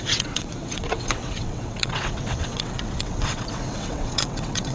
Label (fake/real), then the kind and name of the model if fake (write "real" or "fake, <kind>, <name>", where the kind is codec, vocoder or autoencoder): fake, vocoder, WaveNeXt